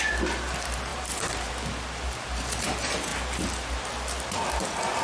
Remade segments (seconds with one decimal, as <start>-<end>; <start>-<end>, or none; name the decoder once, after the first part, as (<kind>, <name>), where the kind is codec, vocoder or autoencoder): 0.9-1.5 (vocoder, BigVGAN v2)